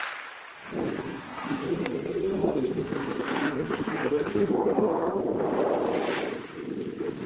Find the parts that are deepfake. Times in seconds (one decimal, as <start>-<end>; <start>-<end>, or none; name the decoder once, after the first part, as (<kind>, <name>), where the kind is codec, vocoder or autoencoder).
1.0-5.2 (codec, SNAC)